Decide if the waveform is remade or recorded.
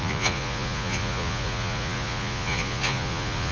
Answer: remade